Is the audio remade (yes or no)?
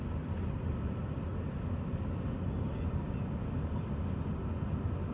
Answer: no